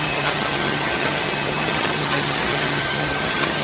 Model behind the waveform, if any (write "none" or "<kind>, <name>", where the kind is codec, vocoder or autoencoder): vocoder, HiFi-GAN